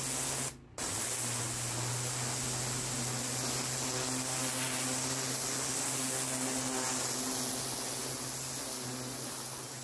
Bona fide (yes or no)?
yes